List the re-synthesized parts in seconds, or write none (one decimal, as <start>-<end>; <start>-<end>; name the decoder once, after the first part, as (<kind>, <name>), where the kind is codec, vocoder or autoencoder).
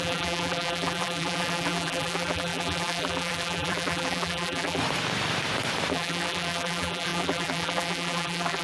0.0-4.8 (vocoder, BigVGAN v2); 5.9-8.6